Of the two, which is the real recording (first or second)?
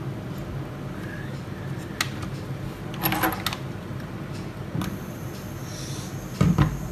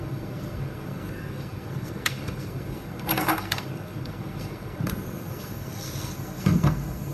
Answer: first